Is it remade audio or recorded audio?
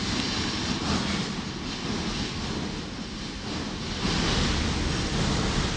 recorded